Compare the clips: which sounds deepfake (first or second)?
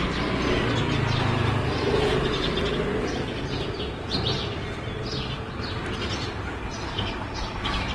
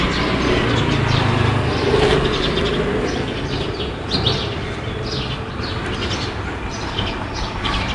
second